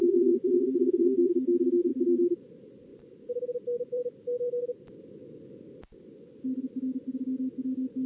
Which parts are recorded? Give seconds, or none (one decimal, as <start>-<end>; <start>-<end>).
1.2-1.9; 2.4-2.9; 4.6-8.1